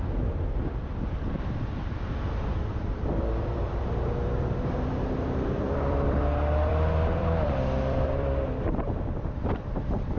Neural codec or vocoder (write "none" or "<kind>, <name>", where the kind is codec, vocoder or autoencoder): vocoder, BigVGAN v2